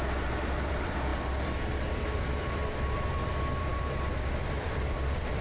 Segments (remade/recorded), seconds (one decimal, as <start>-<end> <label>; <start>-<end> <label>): 0.0-5.4 remade

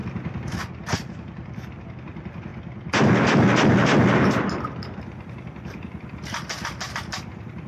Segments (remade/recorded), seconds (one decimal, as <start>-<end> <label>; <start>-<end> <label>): 0.0-7.7 recorded

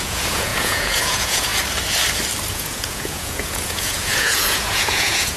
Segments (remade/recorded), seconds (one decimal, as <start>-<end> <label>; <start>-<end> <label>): 0.0-1.5 remade; 1.5-2.5 recorded; 2.5-5.4 remade